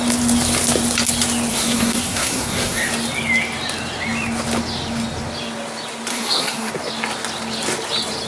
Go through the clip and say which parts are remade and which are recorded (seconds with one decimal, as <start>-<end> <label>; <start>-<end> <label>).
0.0-1.5 recorded; 1.5-2.9 remade; 2.9-6.1 recorded; 6.1-6.7 remade; 6.7-8.3 recorded